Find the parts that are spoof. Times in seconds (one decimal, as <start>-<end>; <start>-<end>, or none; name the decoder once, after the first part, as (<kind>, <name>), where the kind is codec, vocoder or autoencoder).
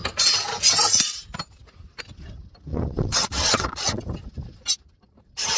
2.7-4.0 (vocoder, WaveNeXt)